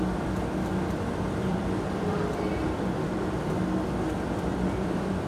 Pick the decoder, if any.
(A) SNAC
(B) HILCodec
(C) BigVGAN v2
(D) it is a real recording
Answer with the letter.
C